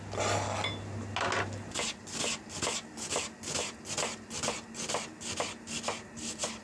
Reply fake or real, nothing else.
real